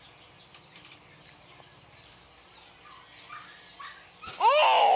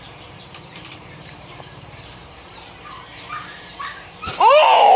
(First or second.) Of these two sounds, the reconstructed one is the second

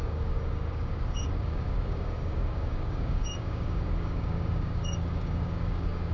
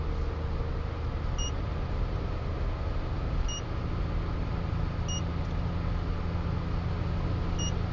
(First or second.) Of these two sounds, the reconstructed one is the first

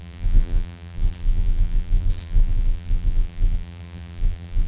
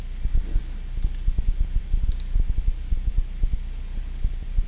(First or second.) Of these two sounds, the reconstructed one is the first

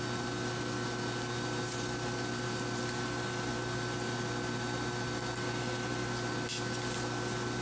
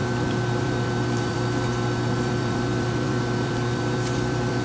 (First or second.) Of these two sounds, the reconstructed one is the second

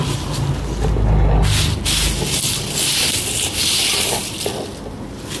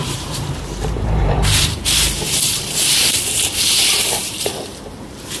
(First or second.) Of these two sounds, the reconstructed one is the second